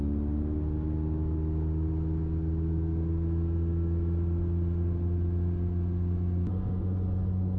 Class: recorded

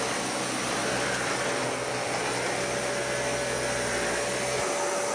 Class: recorded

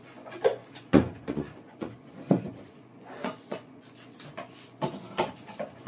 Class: remade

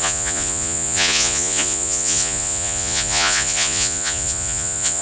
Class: remade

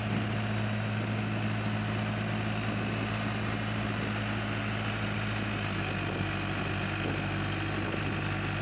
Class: recorded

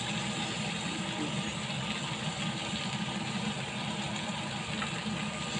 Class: recorded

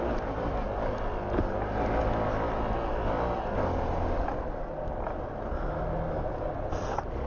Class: recorded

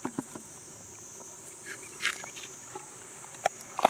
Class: recorded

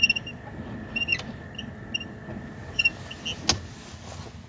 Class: recorded